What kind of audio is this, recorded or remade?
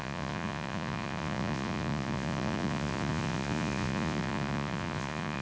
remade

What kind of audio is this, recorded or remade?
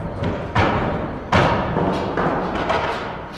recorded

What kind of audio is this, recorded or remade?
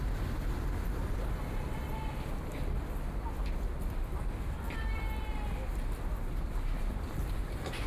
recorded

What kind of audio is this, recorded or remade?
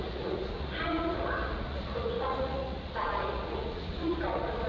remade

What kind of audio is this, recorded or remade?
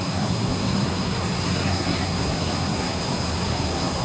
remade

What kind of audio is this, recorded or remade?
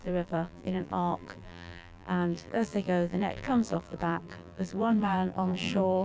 remade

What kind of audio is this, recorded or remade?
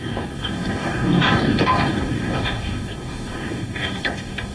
remade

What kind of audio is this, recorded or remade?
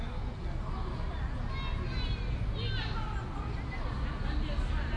recorded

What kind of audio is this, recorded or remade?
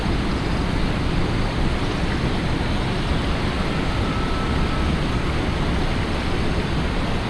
recorded